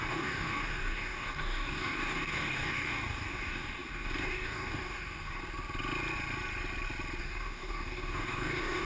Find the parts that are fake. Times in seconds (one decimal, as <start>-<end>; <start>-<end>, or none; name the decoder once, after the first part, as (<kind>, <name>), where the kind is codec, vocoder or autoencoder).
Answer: 0.0-5.4 (codec, DAC); 7.2-8.8